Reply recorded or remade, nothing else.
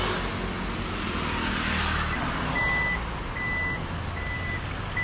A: recorded